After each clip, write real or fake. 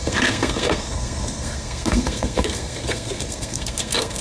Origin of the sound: fake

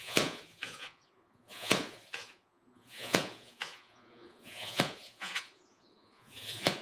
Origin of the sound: fake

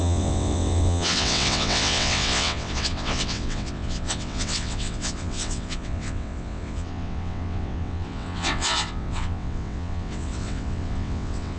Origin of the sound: fake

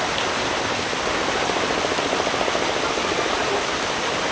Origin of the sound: real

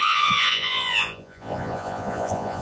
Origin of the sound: fake